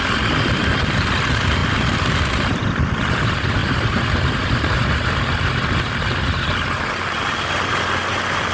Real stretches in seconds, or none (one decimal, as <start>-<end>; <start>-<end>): 0.0-8.5